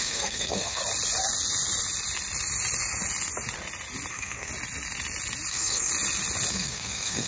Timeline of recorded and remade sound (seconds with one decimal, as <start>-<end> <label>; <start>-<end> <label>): 0.0-0.8 remade; 0.8-4.1 recorded; 4.1-4.5 remade; 4.5-5.5 recorded; 5.5-5.9 remade; 5.9-6.5 recorded; 6.5-7.3 remade